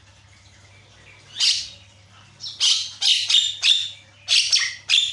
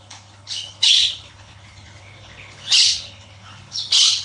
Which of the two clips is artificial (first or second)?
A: second